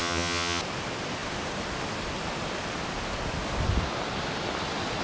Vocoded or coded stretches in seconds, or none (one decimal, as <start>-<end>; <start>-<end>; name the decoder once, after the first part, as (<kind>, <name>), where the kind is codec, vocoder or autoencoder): 0.0-0.6 (vocoder, HiFi-GAN)